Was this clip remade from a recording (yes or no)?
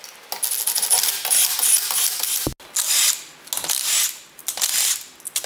no